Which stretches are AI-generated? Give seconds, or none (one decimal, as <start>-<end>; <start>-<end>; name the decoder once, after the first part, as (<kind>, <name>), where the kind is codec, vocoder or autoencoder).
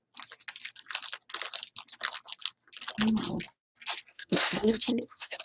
4.1-5.4 (codec, SNAC)